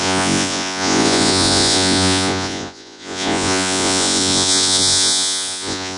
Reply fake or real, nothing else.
fake